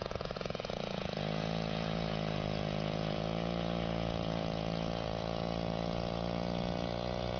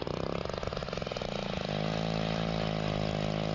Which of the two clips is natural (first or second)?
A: second